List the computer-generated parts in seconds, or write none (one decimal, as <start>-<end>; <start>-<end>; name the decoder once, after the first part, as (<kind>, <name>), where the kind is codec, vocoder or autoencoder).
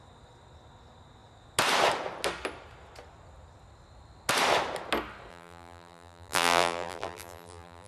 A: 5.3-7.9 (vocoder, BigVGAN v2)